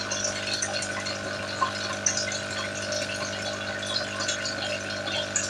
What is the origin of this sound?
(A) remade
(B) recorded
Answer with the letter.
B